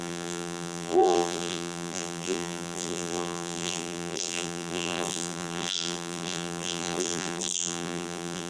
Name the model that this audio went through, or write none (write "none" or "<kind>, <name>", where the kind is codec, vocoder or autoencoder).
vocoder, BigVGAN v2